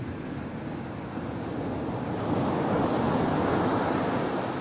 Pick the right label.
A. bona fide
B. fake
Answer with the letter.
A